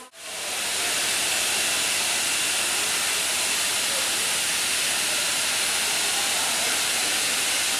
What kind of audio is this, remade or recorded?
recorded